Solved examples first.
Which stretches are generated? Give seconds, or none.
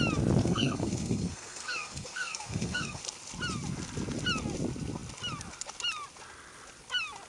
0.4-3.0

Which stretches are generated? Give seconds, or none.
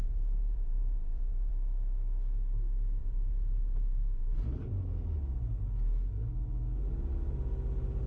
0.0-1.5; 3.0-4.7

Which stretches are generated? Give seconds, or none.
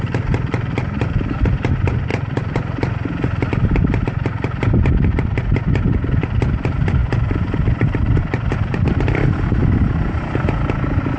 none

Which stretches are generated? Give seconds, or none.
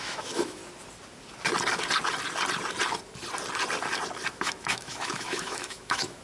0.0-0.6; 4.3-6.2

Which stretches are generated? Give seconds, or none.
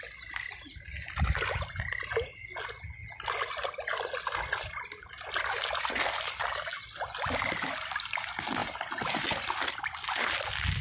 none